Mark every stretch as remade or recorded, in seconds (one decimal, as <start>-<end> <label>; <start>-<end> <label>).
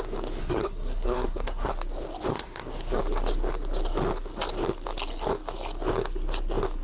0.0-0.4 recorded; 0.4-1.7 remade; 1.7-2.3 recorded; 2.3-3.0 remade; 3.0-6.8 recorded